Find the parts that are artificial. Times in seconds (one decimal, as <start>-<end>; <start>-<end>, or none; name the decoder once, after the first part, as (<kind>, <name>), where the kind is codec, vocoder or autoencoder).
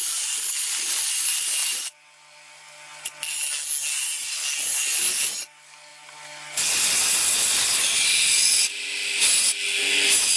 none